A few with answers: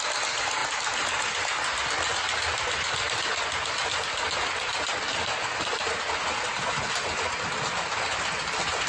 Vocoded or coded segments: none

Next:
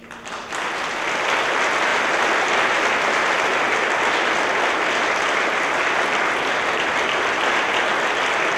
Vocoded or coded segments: none

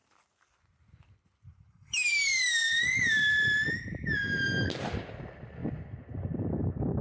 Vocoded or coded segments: 0.0-3.3 (vocoder, BigVGAN v2)

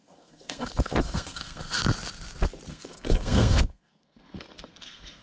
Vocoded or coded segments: 0.0-1.8 (codec, SNAC); 2.7-5.2

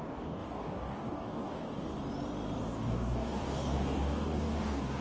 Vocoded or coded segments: 0.0-1.9 (codec, DAC); 2.7-5.0